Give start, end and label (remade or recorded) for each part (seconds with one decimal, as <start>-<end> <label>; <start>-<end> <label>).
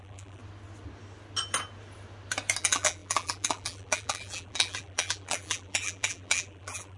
0.0-0.4 remade; 0.4-2.6 recorded; 2.6-7.0 remade